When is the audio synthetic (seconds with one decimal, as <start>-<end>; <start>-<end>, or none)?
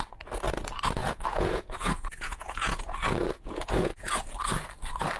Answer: 1.0-4.1